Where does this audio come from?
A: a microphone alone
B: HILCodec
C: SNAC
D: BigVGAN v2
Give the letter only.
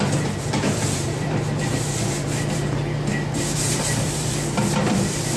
D